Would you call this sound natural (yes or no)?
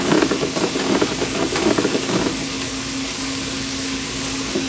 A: no